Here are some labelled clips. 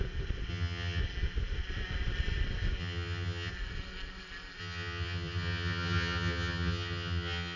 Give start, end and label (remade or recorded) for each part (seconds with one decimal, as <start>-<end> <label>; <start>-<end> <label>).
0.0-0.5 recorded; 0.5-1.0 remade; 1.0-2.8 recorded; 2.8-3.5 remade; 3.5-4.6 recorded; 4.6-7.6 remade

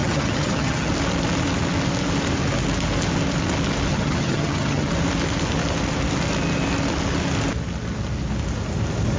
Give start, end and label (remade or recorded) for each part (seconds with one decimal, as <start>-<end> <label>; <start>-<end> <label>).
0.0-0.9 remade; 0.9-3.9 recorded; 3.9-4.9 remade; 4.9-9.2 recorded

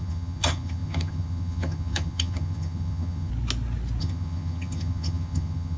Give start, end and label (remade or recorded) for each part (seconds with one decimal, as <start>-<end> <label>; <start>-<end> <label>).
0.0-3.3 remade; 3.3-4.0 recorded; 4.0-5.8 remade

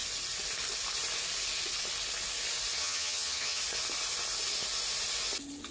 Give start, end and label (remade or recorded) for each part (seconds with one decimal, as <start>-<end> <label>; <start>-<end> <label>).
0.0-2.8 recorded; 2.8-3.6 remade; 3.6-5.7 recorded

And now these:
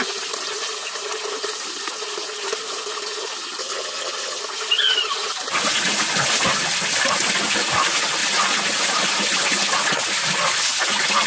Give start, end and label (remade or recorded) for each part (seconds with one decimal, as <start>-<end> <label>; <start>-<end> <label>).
0.0-3.6 recorded; 3.6-4.4 remade; 4.4-11.3 recorded